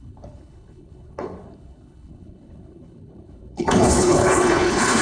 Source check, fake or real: fake